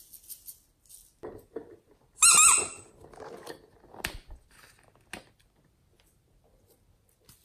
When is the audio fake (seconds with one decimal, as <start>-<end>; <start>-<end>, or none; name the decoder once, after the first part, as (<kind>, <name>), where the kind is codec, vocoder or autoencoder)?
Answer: none